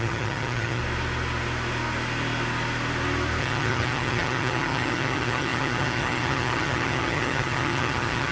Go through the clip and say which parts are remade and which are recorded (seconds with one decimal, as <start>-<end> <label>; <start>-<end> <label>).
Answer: 0.0-0.8 remade; 0.8-3.4 recorded; 3.4-8.3 remade